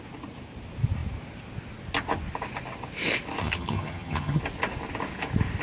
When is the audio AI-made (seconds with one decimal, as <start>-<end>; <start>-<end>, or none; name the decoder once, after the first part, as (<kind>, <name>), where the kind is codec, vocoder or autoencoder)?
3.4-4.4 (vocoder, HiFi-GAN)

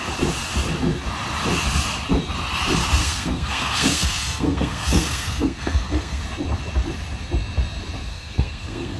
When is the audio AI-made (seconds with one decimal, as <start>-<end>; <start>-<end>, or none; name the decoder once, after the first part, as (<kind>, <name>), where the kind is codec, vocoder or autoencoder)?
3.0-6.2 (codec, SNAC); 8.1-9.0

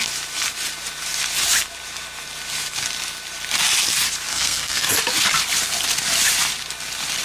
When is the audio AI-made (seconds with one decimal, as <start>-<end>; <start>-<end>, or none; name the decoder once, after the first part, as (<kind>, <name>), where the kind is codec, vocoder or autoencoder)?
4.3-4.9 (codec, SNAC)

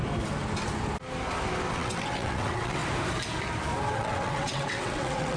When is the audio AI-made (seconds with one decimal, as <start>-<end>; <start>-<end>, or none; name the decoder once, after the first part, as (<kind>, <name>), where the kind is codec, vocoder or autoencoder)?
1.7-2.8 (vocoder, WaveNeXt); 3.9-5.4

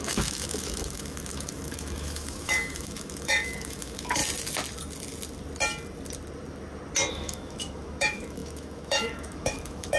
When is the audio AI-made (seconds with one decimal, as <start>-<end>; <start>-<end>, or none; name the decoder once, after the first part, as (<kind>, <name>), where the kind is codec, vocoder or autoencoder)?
0.0-4.2 (autoencoder, DAC-VAE); 7.1-10.0

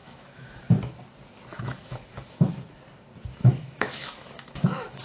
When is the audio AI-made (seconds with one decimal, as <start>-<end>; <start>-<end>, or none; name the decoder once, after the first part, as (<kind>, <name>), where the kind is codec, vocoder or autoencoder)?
0.0-0.8 (autoencoder, DAC-VAE); 1.5-2.5; 3.4-5.0

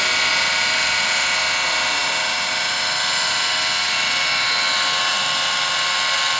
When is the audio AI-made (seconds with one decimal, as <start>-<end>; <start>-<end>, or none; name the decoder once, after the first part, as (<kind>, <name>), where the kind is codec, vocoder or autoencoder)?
none

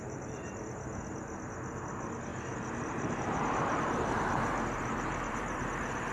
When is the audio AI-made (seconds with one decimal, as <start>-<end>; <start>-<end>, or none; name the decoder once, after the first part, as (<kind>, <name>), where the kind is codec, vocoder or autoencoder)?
0.0-0.5 (vocoder, BigVGAN v2); 2.3-6.1